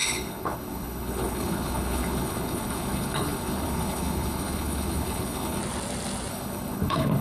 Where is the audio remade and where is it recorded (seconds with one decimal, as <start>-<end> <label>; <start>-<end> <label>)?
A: 0.0-5.6 remade; 5.6-6.3 recorded; 6.3-7.2 remade